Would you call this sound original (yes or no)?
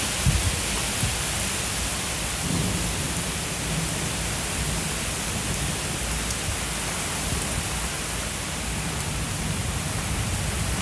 yes